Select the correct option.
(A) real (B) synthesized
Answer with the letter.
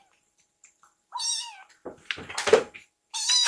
A